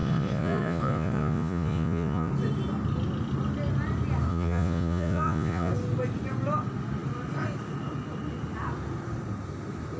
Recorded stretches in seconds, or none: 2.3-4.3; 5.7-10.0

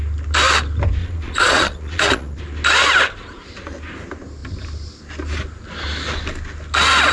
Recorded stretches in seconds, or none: 0.0-1.0; 2.4-7.1

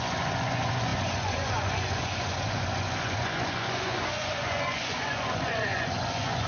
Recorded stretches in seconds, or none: none